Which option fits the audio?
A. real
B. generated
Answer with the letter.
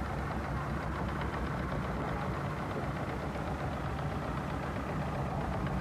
A